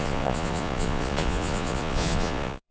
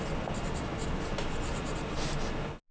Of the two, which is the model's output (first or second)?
first